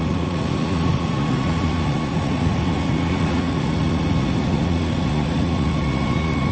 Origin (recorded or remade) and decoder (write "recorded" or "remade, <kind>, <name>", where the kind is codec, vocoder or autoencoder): remade, vocoder, Vocos